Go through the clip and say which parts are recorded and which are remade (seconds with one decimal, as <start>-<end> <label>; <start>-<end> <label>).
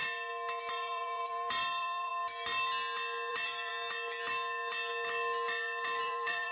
0.0-0.7 recorded; 0.7-2.1 remade; 2.1-3.3 recorded; 3.3-3.7 remade; 3.7-6.0 recorded; 6.0-6.5 remade